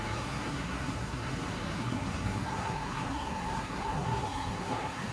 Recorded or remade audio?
remade